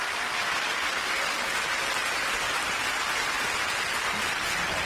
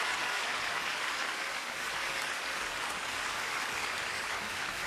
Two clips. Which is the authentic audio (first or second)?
first